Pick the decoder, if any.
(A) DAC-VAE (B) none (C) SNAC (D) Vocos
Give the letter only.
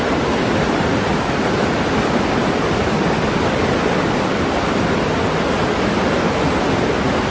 B